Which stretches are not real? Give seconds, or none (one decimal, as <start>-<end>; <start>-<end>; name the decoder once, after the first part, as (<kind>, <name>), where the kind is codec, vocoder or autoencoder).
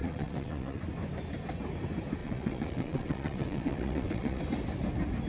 0.0-0.8 (vocoder, WaveNeXt); 2.2-4.4